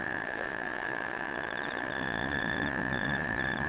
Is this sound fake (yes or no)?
yes